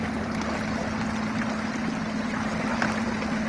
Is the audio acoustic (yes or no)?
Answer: yes